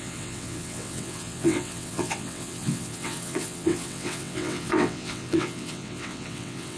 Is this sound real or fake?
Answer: fake